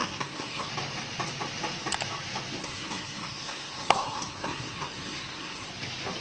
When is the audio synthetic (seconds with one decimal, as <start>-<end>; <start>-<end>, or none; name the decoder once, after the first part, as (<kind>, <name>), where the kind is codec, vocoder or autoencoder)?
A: 0.0-0.7 (codec, SNAC); 2.6-5.7

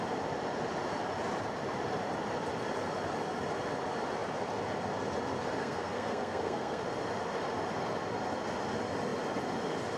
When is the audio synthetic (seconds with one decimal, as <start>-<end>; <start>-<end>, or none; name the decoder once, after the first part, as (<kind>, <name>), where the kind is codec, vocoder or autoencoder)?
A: 5.6-6.8 (codec, SNAC)

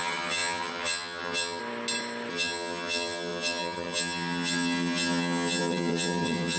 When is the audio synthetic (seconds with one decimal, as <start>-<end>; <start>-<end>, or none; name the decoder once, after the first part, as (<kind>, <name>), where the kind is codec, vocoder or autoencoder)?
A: 0.0-1.6 (vocoder, HiFi-GAN); 2.3-6.6

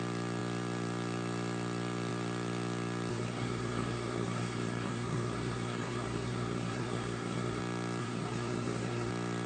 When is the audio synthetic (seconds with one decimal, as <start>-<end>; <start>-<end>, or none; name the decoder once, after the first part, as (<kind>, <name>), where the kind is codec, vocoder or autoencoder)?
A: 3.1-7.6 (codec, SNAC); 8.0-9.1

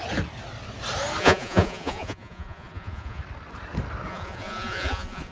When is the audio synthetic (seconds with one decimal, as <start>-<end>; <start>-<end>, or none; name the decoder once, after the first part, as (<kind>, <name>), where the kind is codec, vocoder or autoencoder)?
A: 1.2-3.2 (vocoder, Vocos); 4.1-5.3